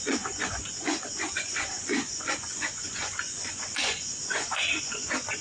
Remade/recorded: remade